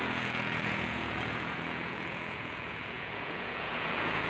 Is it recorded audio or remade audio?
remade